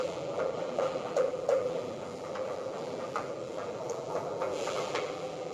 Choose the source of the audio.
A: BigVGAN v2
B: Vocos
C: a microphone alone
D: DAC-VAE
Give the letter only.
A